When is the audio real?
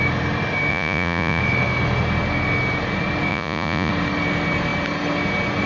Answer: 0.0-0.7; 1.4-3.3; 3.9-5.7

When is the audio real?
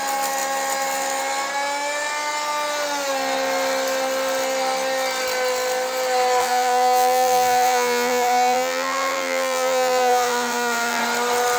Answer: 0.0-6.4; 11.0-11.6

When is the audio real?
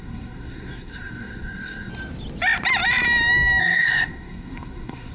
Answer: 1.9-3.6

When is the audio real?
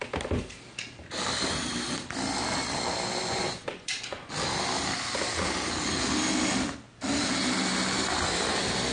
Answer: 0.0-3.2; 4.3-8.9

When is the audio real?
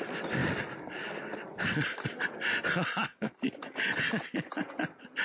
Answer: 0.0-5.2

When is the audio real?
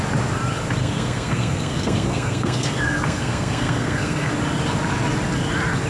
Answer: 0.0-0.8; 4.3-5.9